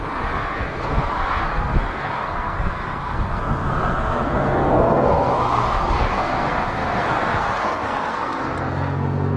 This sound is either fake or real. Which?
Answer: fake